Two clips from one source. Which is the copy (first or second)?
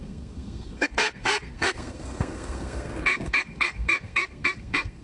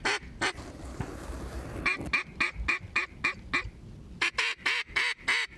first